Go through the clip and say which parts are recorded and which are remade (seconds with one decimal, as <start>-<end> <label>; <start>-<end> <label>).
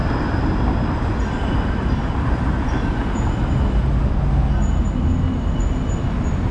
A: 0.0-6.5 recorded